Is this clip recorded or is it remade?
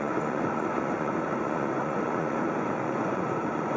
remade